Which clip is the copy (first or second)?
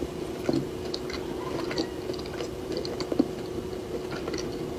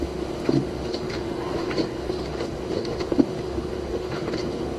second